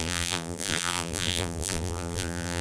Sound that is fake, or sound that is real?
fake